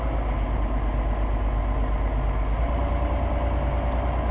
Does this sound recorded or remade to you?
recorded